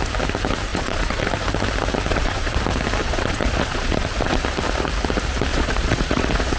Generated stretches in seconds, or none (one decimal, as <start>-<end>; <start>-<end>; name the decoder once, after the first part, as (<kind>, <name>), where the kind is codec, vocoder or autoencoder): 0.7-1.3 (vocoder, Vocos); 2.1-2.6; 3.0-4.4; 5.5-6.6

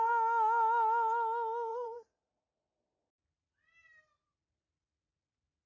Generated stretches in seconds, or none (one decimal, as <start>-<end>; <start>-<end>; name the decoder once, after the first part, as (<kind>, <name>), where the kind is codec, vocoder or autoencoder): 1.7-2.4 (vocoder, Vocos)

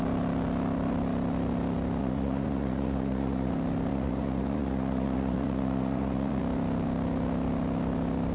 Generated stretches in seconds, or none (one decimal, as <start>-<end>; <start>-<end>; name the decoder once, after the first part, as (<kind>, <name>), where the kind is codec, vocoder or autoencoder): 2.0-3.5 (vocoder, Vocos); 3.9-6.4

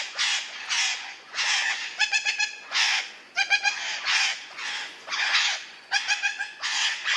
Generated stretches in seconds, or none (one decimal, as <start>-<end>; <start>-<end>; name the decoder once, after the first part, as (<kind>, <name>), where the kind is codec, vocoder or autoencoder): 0.0-7.2 (vocoder, Vocos)

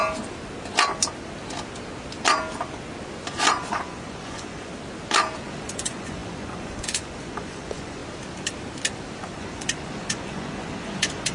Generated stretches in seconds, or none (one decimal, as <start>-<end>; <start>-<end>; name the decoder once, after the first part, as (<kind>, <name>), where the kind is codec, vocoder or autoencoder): 3.4-4.7 (vocoder, Vocos); 5.4-8.0; 9.2-11.3

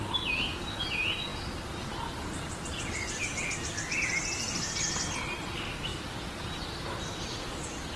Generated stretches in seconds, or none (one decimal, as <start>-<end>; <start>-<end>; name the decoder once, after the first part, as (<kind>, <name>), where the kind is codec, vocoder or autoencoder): none

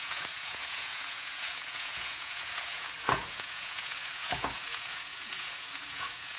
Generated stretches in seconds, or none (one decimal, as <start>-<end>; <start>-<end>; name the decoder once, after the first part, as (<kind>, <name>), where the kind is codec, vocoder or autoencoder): 0.0-6.4 (vocoder, Vocos)

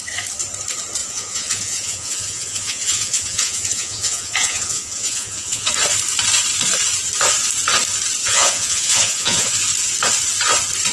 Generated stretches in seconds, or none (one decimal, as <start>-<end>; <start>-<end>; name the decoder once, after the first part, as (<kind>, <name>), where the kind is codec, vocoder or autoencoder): 1.0-5.7 (vocoder, Vocos); 8.2-9.5